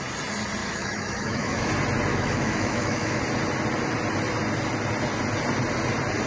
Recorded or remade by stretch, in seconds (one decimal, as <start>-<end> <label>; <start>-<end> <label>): 0.0-0.6 recorded; 0.6-1.7 remade; 1.7-2.1 recorded; 2.1-3.2 remade; 3.2-6.3 recorded